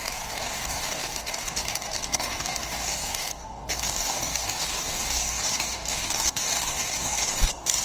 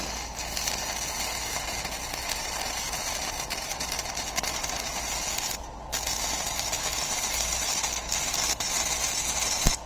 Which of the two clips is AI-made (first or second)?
first